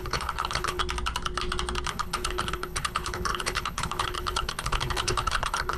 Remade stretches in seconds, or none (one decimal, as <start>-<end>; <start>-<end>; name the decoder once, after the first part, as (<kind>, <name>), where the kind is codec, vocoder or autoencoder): 0.0-0.8 (codec, HILCodec); 1.9-5.8